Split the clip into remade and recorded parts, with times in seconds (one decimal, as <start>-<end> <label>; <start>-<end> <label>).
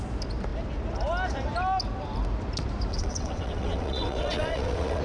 0.0-2.9 recorded; 2.9-5.0 remade